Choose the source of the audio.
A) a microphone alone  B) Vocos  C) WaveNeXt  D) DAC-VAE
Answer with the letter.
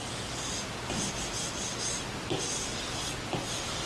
A